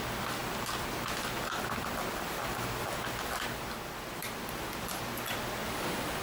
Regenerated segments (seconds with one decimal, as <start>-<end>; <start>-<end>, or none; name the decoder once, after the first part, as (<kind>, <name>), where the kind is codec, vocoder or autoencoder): none